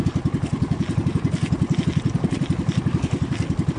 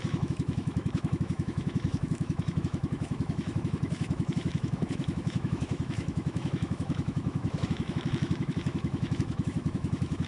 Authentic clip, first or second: first